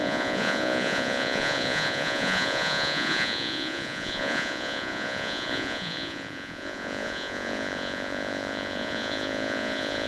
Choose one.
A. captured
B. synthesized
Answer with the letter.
B